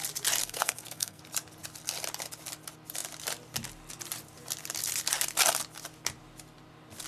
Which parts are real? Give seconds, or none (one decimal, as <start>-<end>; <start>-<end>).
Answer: 0.0-0.4; 1.2-7.1